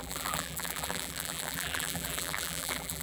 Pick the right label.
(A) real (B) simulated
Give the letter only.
B